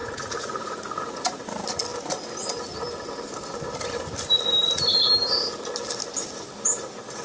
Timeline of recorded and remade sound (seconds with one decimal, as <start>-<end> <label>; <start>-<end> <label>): 0.0-1.4 remade; 1.4-7.2 recorded